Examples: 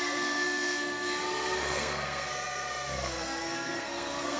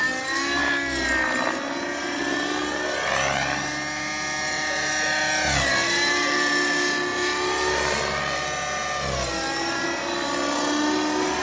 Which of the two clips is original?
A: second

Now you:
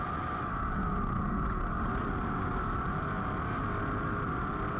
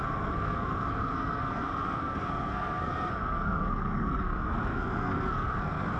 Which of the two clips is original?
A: first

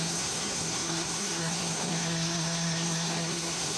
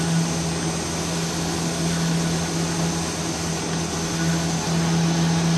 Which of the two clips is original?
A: second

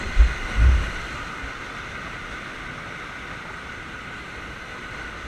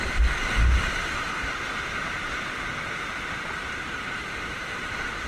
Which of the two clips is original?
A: first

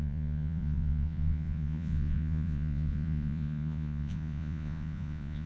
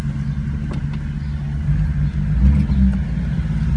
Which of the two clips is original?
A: second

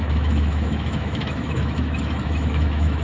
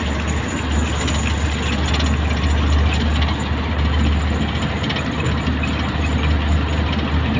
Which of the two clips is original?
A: second